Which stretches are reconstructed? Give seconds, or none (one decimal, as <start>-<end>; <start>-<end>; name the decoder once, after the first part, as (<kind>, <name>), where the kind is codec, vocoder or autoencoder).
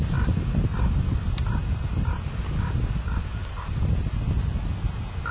none